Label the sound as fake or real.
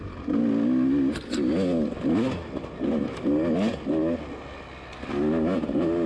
real